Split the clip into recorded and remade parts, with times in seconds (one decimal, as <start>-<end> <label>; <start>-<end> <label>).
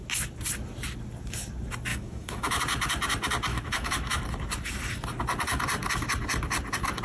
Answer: 0.0-1.9 recorded; 1.9-2.6 remade; 2.6-3.5 recorded; 3.5-4.2 remade; 4.2-7.0 recorded